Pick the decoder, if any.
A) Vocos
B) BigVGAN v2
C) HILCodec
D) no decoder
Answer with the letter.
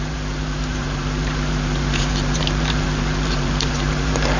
B